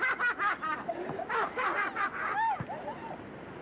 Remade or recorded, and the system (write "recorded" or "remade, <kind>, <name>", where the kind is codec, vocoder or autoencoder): recorded